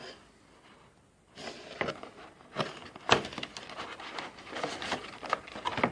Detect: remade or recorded recorded